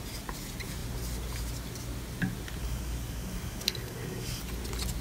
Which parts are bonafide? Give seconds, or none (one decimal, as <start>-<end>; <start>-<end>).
0.0-2.6; 4.4-5.0